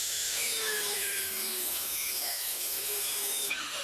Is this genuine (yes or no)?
no